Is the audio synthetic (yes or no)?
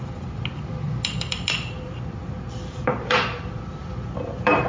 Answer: yes